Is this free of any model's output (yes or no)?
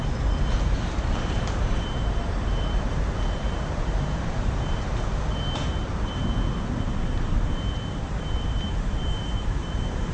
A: no